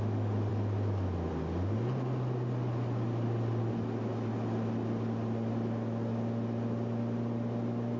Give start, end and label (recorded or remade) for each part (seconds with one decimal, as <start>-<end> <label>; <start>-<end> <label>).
0.0-8.0 recorded